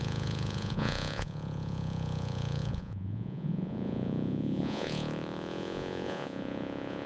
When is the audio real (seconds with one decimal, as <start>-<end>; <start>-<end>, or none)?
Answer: none